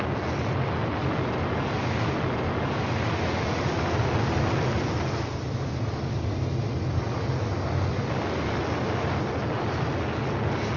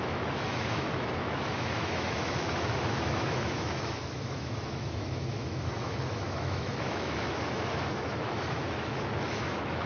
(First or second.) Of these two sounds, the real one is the first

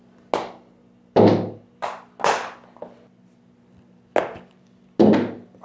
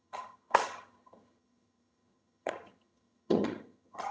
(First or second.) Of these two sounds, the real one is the first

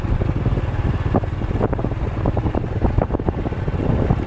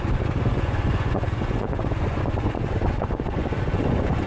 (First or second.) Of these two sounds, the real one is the first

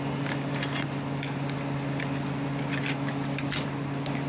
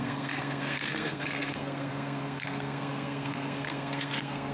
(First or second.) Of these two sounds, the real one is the first